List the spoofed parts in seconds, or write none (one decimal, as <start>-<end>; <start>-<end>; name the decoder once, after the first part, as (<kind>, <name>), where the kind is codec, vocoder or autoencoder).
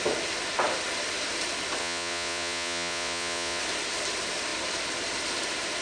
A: 1.8-3.6 (vocoder, Vocos)